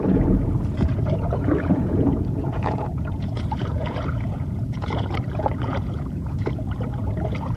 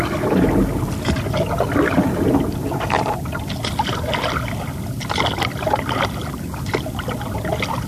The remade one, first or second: first